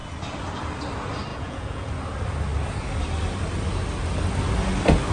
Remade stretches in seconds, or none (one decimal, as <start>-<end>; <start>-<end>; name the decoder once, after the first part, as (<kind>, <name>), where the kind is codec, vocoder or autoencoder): 1.3-1.9 (vocoder, Vocos)